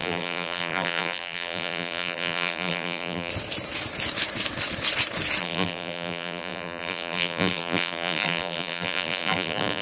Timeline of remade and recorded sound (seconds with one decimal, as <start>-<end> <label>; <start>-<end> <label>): 0.0-3.3 remade; 3.3-5.4 recorded; 5.4-9.8 remade